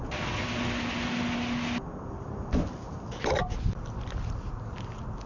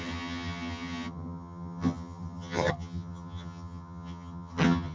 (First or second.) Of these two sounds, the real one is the first